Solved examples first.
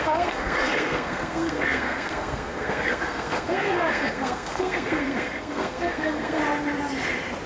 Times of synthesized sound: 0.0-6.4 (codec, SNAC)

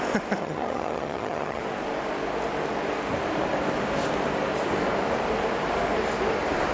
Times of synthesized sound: 0.4-1.6 (vocoder, HiFi-GAN)